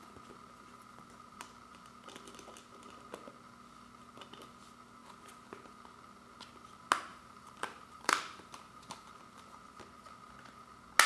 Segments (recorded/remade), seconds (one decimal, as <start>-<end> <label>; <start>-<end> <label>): 0.0-7.1 recorded; 7.1-9.1 remade; 9.1-11.1 recorded